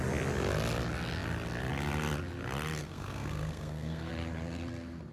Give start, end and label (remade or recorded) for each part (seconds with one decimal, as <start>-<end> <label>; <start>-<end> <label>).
0.0-2.8 recorded; 2.8-4.1 remade; 4.1-5.1 recorded